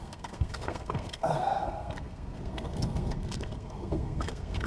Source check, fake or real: fake